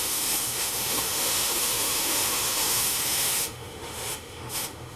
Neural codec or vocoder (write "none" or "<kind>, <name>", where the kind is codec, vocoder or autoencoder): autoencoder, DAC-VAE